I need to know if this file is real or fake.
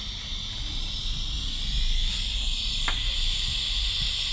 real